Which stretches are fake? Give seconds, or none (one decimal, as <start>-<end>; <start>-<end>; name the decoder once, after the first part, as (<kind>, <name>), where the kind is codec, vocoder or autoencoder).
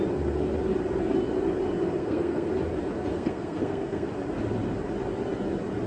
2.0-2.5 (codec, SNAC); 3.1-4.1